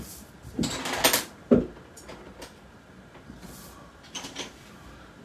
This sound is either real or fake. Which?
real